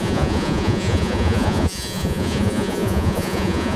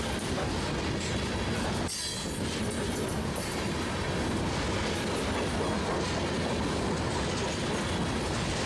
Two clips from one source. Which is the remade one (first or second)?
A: first